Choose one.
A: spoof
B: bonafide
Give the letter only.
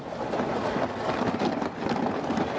B